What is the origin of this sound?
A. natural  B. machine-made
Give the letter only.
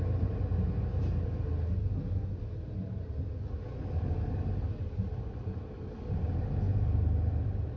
A